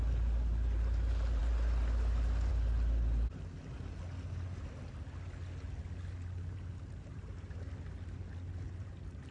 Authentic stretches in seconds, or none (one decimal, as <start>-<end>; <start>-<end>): 0.0-9.3